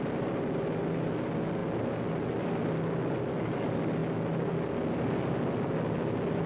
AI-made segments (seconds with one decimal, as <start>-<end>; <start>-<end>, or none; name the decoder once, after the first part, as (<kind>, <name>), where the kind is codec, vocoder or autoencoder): none